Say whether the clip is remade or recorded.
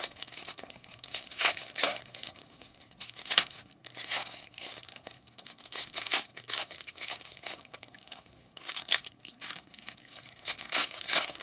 remade